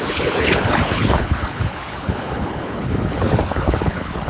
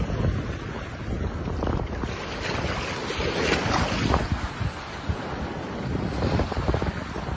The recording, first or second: second